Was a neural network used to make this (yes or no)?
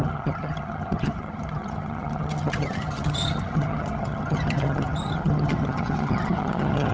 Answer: yes